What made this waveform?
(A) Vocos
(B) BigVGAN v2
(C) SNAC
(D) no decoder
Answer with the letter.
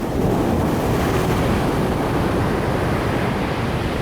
D